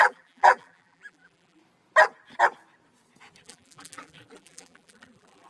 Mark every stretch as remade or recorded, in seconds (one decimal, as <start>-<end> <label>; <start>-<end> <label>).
0.0-1.6 remade; 1.6-3.4 recorded; 3.4-5.5 remade